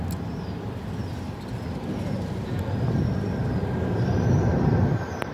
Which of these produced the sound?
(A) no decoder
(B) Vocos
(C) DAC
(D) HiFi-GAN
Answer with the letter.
A